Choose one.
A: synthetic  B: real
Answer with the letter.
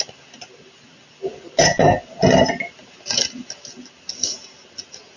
B